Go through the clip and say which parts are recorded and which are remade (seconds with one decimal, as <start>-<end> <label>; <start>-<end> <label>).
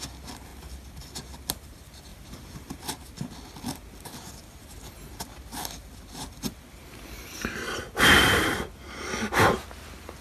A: 0.0-0.5 recorded; 0.5-1.1 remade; 1.1-2.1 recorded; 2.1-2.9 remade; 2.9-10.2 recorded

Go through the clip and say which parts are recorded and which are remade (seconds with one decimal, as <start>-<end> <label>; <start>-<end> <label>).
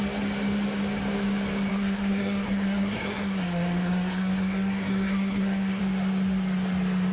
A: 0.0-1.7 recorded; 1.7-5.8 remade; 5.8-7.1 recorded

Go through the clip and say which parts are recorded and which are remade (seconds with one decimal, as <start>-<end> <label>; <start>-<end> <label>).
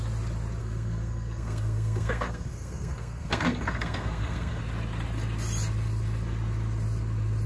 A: 0.0-0.6 recorded; 0.6-4.6 remade; 4.6-7.5 recorded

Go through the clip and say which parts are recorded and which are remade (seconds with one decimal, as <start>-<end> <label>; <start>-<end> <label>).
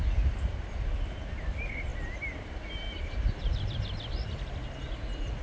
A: 0.0-5.4 recorded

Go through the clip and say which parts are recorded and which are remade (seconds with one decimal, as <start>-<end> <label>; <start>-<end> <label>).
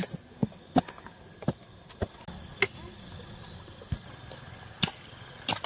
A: 0.0-5.7 recorded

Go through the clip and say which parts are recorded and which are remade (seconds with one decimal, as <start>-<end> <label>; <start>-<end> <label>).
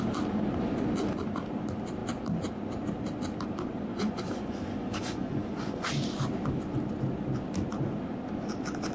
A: 0.0-3.9 recorded; 3.9-5.9 remade; 5.9-8.9 recorded